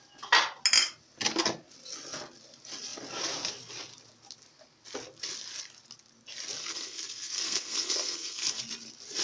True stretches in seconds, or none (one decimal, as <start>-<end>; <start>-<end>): 0.0-6.6; 8.6-9.2